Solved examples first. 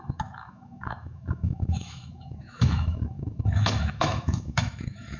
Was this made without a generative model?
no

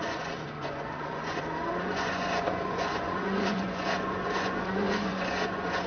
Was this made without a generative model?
no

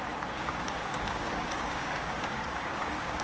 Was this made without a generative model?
no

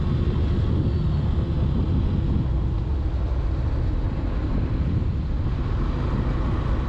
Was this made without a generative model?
yes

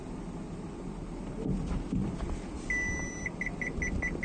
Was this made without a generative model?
yes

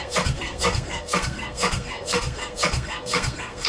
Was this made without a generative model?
no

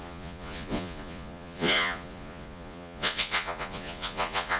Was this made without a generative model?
no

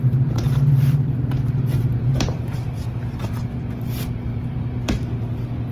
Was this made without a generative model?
no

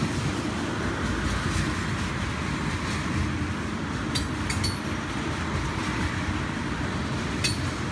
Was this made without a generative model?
yes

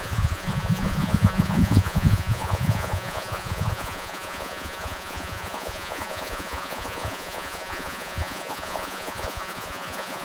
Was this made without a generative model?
no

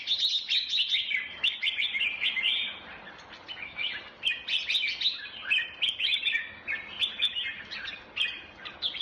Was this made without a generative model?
yes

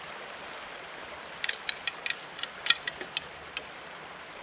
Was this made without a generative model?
yes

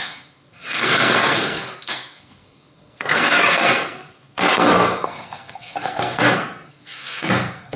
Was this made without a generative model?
no